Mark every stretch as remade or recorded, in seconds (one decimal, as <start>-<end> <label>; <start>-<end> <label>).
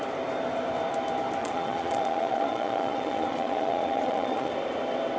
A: 0.0-1.4 recorded; 1.4-4.5 remade; 4.5-5.2 recorded